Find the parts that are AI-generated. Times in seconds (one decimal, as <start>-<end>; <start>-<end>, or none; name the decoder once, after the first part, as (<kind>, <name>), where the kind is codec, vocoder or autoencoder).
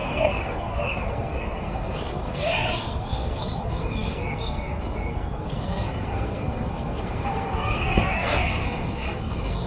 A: 0.0-9.7 (codec, SNAC)